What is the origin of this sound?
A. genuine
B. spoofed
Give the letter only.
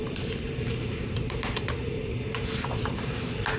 B